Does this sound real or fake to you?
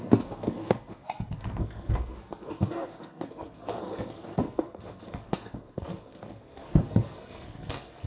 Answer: fake